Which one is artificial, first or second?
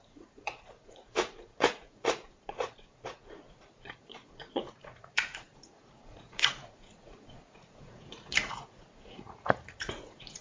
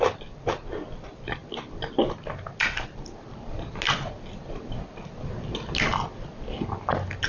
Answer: first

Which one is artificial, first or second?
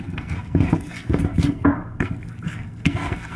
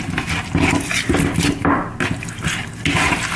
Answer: first